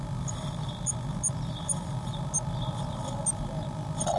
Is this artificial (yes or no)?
no